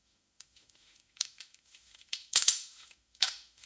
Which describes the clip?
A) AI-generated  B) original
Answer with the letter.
A